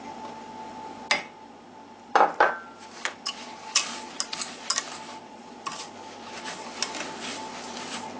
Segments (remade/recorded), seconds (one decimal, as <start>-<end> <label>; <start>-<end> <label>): 0.0-8.2 recorded